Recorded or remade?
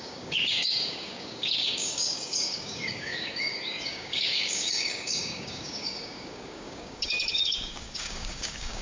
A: remade